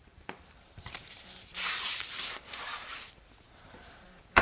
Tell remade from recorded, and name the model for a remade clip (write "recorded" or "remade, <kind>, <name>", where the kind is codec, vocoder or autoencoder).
remade, vocoder, BigVGAN v2